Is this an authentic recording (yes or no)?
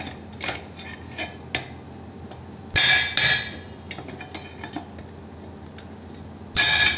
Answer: yes